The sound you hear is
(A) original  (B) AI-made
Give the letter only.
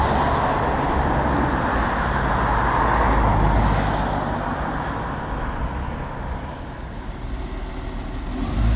A